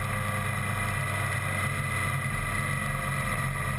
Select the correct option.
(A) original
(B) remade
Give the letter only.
A